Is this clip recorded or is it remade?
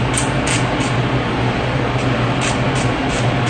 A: recorded